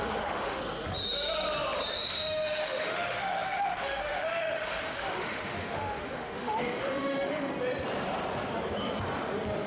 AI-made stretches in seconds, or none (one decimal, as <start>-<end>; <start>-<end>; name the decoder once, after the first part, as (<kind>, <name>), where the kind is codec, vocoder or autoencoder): 0.0-0.6 (autoencoder, DAC-VAE); 1.9-7.5